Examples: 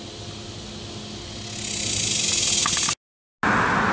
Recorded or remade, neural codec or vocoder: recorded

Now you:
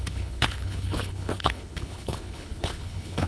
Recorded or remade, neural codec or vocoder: remade, codec, HILCodec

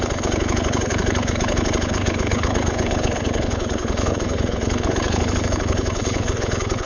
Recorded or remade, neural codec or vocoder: remade, codec, HILCodec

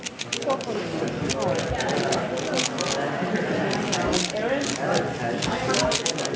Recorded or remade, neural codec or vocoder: recorded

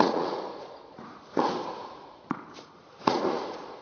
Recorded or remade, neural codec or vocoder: remade, vocoder, Vocos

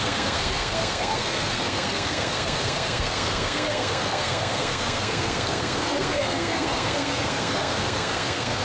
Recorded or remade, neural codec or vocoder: remade, codec, SNAC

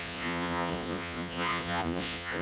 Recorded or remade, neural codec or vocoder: remade, vocoder, Vocos